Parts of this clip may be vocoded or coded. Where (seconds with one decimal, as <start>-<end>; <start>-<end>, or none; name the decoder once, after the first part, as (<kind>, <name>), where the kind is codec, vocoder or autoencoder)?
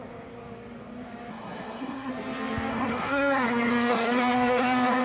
1.3-2.1 (codec, SNAC); 2.7-5.0